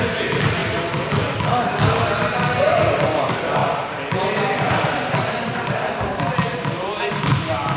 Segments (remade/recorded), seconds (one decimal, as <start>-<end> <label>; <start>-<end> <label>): 0.0-7.8 recorded